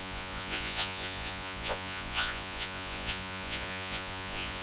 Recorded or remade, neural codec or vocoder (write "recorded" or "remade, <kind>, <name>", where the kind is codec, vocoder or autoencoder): remade, vocoder, Vocos